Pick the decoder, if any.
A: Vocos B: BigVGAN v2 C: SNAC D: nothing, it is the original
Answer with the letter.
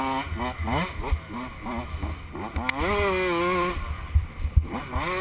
D